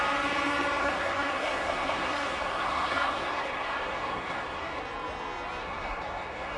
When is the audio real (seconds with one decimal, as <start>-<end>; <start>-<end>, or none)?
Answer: 0.0-0.8; 4.8-5.6

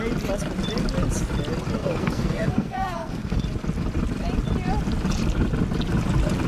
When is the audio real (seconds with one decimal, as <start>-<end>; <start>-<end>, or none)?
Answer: 0.0-1.8; 3.4-6.5

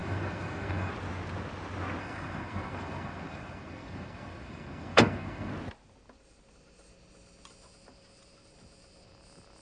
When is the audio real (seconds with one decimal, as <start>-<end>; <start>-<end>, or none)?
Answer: 0.9-2.0; 5.5-9.6

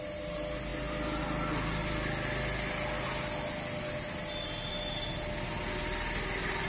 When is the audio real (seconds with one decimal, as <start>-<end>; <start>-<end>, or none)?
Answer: 0.0-6.7